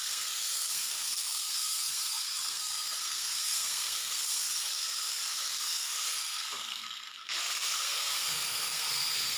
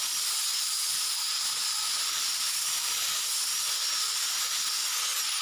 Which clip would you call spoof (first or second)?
first